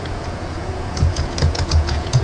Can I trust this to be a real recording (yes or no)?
no